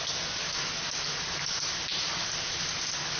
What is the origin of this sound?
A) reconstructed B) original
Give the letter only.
B